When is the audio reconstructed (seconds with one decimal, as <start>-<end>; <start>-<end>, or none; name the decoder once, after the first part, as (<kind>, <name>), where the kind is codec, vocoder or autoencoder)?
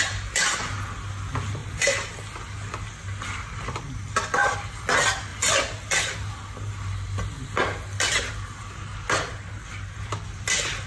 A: none